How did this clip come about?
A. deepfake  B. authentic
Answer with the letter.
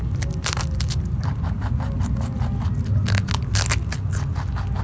B